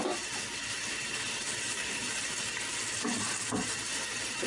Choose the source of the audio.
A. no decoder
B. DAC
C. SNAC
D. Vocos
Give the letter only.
A